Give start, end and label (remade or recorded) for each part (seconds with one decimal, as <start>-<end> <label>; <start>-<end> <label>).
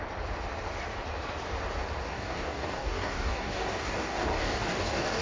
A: 0.0-2.0 recorded; 2.0-5.2 remade